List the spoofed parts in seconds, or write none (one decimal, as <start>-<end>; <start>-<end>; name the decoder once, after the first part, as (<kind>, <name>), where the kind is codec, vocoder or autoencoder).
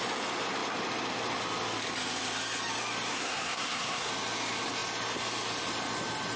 3.1-4.1 (codec, SNAC)